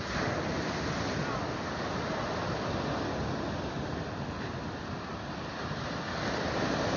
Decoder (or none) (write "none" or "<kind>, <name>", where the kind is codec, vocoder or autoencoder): none